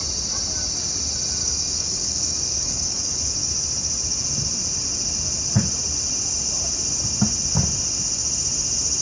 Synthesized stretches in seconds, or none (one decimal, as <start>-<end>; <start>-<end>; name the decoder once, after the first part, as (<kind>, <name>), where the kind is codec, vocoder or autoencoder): 1.4-3.3 (codec, DAC)